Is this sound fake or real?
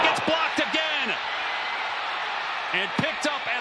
real